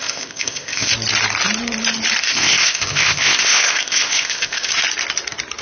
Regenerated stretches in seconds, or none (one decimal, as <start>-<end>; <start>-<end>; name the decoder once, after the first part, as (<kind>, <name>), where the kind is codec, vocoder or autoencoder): 0.0-0.9 (codec, ZipCodec); 2.2-4.7